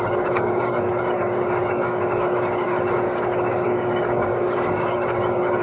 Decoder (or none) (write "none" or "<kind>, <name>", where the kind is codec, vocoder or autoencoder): codec, DAC